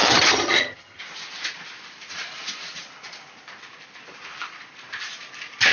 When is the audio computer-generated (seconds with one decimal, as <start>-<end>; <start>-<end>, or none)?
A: 0.0-1.0